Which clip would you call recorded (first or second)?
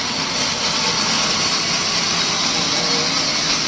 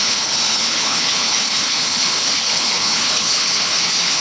first